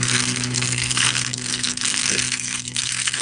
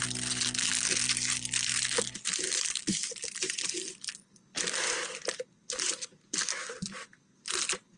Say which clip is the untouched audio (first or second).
second